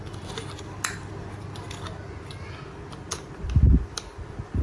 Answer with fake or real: real